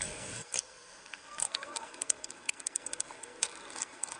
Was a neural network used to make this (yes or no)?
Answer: yes